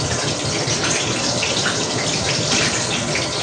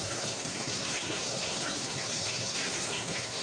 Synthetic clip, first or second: second